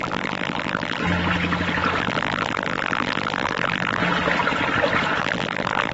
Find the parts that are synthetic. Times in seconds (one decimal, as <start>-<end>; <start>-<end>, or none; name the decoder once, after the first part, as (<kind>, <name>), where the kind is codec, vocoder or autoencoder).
0.0-1.0 (vocoder, BigVGAN v2); 2.0-4.0; 5.2-5.9